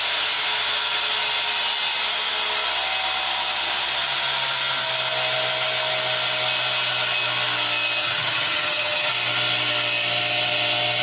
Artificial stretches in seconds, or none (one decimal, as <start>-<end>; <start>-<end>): 8.0-9.1